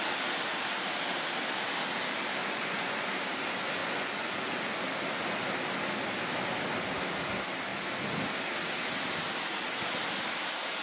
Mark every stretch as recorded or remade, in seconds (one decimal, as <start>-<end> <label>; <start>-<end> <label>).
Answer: 0.0-2.4 recorded; 2.4-3.1 remade; 3.1-3.8 recorded; 3.8-4.3 remade; 4.3-10.8 recorded